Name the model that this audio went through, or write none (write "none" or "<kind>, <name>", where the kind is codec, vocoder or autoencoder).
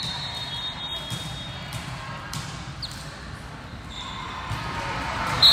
vocoder, BigVGAN v2